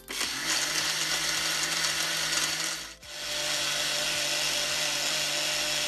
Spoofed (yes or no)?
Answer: no